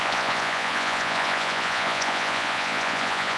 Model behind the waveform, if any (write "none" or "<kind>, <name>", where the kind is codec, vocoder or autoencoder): vocoder, Vocos